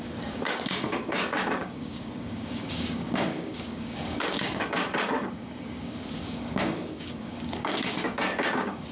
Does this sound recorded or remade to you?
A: remade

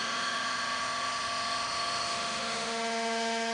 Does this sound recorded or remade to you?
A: remade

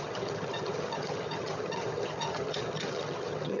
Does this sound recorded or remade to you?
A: remade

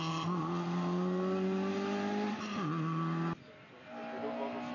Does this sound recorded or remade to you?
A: recorded